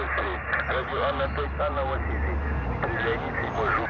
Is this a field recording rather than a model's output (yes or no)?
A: yes